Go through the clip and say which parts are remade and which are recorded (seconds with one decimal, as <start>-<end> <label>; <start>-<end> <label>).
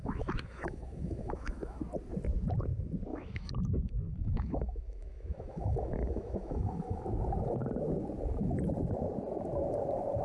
0.0-1.8 remade; 1.8-3.1 recorded; 3.1-7.0 remade; 7.0-10.2 recorded